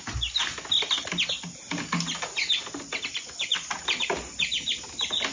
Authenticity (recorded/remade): recorded